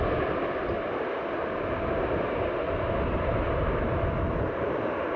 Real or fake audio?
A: real